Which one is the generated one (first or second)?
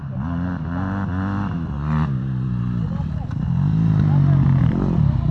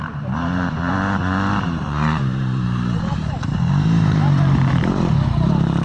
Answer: second